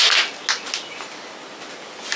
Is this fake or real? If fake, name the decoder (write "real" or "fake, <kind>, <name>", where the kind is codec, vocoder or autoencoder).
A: real